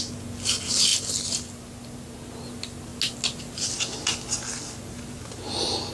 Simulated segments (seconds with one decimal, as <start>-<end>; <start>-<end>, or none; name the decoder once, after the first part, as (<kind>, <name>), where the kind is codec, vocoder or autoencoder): none